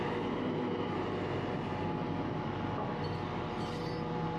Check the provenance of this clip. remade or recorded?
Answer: recorded